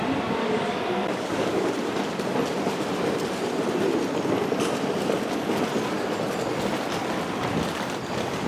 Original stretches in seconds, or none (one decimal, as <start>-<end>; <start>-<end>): 0.0-0.4; 1.7-8.5